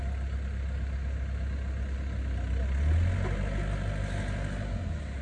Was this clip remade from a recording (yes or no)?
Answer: no